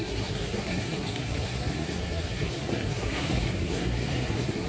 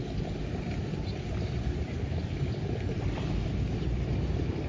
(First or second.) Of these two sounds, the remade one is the first